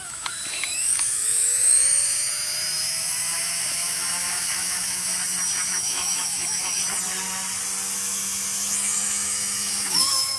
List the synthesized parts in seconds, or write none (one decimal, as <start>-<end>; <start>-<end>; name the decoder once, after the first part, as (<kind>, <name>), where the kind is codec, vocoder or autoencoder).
0.0-5.1 (autoencoder, DAC-VAE); 5.7-6.8; 7.9-10.4